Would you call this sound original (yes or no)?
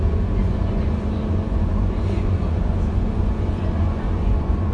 no